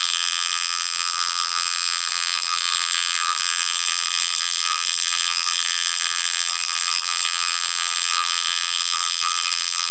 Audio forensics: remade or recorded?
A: remade